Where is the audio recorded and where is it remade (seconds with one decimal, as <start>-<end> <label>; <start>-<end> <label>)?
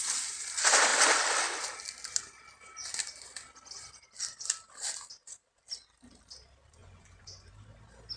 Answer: 0.0-6.8 recorded; 6.8-7.5 remade; 7.5-8.2 recorded